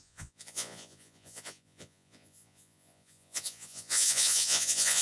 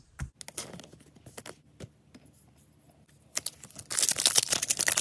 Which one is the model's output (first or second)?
first